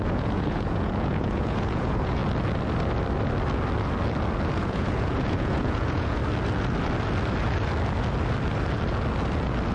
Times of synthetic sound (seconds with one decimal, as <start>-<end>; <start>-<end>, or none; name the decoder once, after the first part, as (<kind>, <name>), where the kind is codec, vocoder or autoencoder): 0.0-2.2 (vocoder, Vocos); 4.5-6.2